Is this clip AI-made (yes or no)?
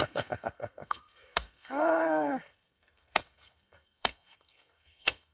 yes